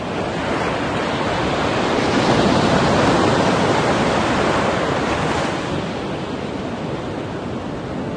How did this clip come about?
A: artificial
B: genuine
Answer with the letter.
B